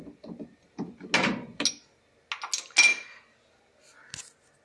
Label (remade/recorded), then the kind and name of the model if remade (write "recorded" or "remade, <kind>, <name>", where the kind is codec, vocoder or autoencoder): recorded